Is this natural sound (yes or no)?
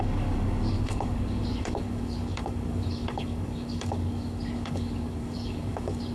no